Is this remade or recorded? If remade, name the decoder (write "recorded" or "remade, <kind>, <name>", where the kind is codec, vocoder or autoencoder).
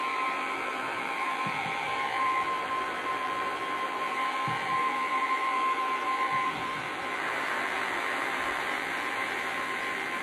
remade, vocoder, BigVGAN v2